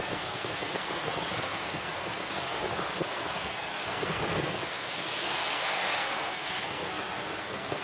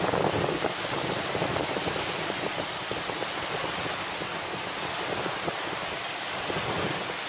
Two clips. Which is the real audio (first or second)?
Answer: second